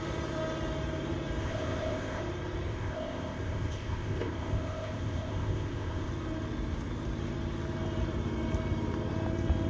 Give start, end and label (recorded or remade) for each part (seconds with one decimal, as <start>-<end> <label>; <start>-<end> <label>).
0.0-1.4 recorded; 1.4-2.2 remade; 2.2-2.7 recorded; 2.7-6.1 remade; 6.1-9.7 recorded